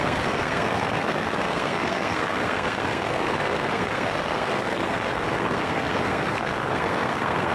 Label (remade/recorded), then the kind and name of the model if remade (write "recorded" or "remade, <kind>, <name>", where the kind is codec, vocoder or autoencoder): remade, codec, SNAC